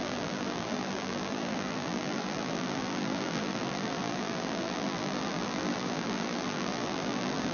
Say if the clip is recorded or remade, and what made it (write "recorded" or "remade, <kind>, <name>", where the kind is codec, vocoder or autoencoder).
remade, vocoder, BigVGAN v2